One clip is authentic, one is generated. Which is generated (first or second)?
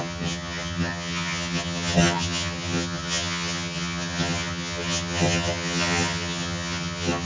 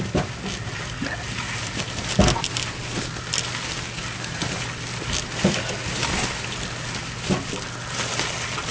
first